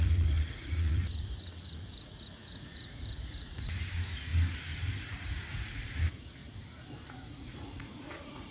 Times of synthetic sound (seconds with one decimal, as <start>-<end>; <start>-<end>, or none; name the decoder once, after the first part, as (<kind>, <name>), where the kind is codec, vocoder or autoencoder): 0.0-4.3 (vocoder, Vocos); 5.0-6.4; 7.1-8.5